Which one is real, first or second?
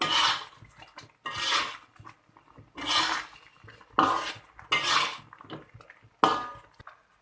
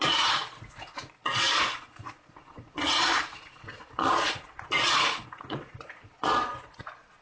first